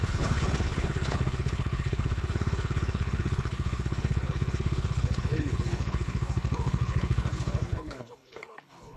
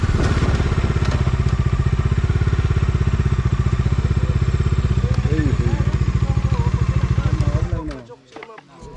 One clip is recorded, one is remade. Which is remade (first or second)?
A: first